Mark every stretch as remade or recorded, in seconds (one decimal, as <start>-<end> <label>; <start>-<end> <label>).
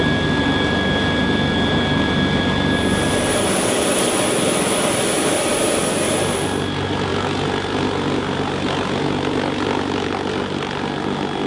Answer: 0.0-11.5 recorded